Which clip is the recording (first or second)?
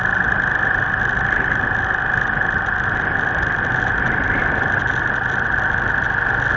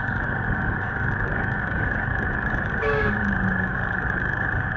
first